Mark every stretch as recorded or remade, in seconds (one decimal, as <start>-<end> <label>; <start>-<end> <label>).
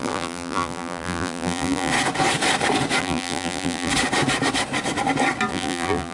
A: 0.0-1.9 remade; 1.9-3.0 recorded; 3.0-3.9 remade; 3.9-5.5 recorded; 5.5-6.1 remade